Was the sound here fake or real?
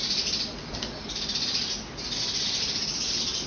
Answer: fake